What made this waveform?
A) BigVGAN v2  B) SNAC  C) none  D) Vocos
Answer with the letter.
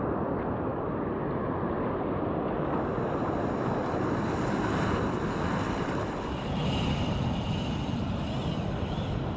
C